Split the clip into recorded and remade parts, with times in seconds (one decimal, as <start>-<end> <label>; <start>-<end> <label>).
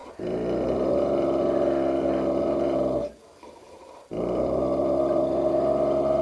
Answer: 0.0-1.0 remade; 1.0-4.1 recorded; 4.1-5.5 remade; 5.5-6.2 recorded